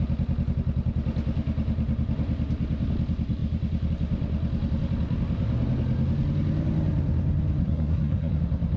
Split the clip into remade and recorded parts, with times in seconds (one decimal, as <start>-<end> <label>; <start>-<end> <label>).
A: 0.0-7.6 recorded; 7.6-8.4 remade; 8.4-8.8 recorded